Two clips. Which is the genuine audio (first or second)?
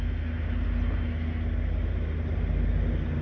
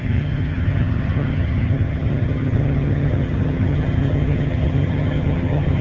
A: first